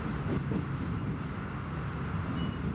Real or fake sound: real